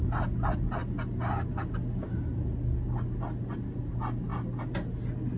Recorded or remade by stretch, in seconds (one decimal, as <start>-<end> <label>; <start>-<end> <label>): 0.0-5.4 recorded